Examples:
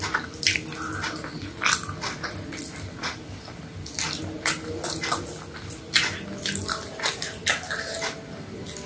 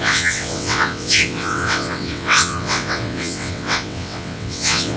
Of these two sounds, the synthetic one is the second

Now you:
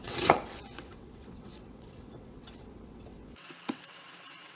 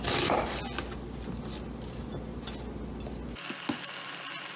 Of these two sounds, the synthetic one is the first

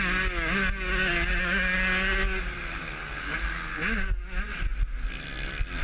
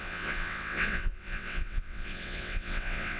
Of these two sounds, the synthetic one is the second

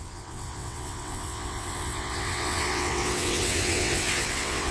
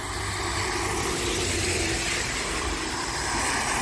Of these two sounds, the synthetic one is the first